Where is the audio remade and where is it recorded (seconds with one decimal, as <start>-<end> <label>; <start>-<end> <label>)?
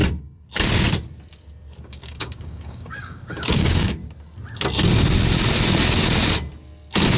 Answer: 0.0-1.8 recorded; 1.8-4.0 remade; 4.0-7.2 recorded